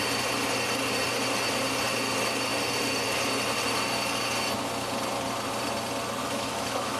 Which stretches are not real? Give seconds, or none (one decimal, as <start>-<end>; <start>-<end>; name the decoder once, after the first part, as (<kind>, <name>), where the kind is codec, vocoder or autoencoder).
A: 6.2-7.0 (autoencoder, DAC-VAE)